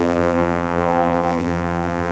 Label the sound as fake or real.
fake